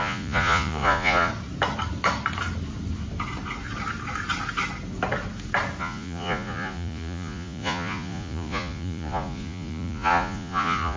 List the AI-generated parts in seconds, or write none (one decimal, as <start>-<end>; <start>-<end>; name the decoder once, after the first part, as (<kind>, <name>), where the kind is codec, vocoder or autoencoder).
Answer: 0.0-1.3 (vocoder, Vocos); 5.8-11.0